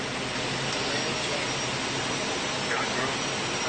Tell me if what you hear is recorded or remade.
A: recorded